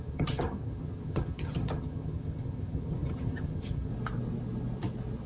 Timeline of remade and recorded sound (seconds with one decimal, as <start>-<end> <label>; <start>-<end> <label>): 0.0-3.9 remade; 3.9-5.3 recorded